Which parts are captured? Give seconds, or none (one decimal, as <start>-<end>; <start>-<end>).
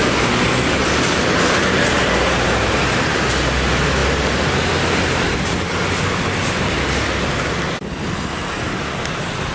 0.0-9.5